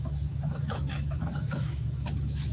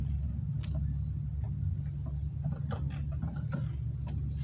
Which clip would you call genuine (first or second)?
second